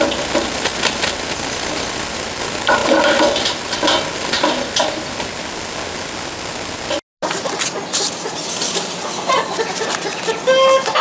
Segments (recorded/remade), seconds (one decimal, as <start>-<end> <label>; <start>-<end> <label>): 0.0-0.7 recorded; 0.7-2.4 remade; 2.4-11.0 recorded